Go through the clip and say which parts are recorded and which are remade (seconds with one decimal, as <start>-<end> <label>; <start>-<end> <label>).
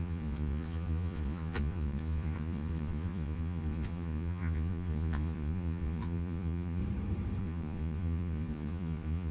0.0-6.8 remade; 6.8-7.4 recorded; 7.4-9.3 remade